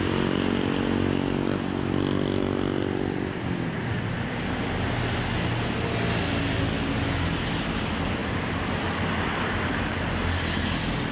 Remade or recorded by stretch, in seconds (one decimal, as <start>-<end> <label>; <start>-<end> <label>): 0.0-11.1 recorded